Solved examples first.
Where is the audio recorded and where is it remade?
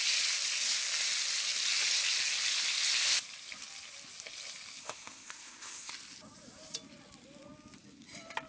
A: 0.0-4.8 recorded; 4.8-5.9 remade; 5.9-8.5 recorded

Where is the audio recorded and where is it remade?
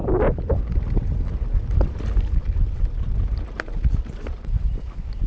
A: 0.0-5.3 recorded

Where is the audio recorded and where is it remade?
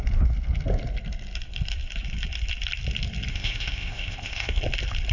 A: 0.0-3.3 recorded; 3.3-4.6 remade; 4.6-5.1 recorded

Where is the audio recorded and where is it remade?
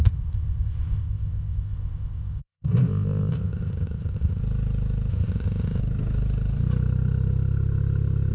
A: 0.0-4.4 remade; 4.4-5.1 recorded; 5.1-5.8 remade; 5.8-8.3 recorded